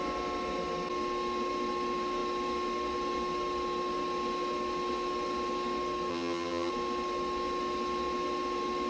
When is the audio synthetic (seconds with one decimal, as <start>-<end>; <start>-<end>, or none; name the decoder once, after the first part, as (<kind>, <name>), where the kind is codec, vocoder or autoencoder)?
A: 6.1-6.7 (vocoder, HiFi-GAN)